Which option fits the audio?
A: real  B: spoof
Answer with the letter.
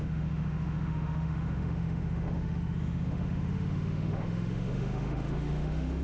B